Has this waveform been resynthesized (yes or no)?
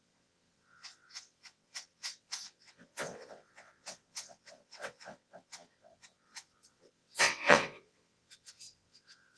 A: yes